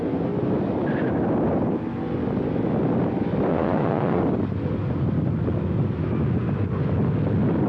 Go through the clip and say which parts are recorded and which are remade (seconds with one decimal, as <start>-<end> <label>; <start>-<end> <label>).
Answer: 0.0-3.5 recorded; 3.5-4.2 remade; 4.2-7.7 recorded